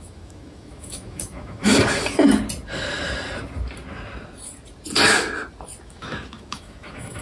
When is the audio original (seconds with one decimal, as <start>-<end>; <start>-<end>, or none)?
1.7-5.8

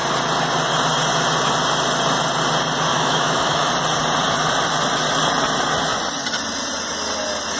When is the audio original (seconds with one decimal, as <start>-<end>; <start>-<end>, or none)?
0.0-2.9; 3.7-7.6

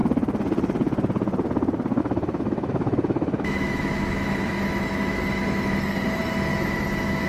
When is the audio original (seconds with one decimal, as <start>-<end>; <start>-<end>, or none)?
0.0-2.0

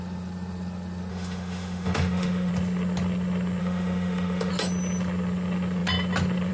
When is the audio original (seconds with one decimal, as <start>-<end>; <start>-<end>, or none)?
0.0-1.1; 2.5-3.6; 4.5-6.5

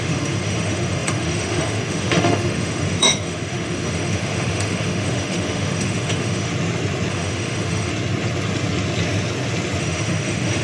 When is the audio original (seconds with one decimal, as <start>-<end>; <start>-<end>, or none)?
6.5-7.1; 7.9-9.8

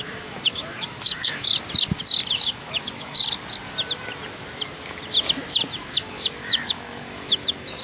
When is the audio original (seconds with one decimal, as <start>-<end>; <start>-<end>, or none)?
1.5-2.3; 3.2-6.0

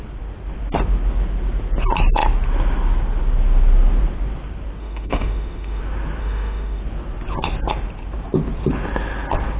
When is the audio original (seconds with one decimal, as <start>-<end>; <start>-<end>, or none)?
0.0-4.8; 5.8-6.2; 6.8-9.6